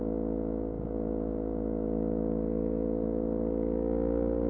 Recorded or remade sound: recorded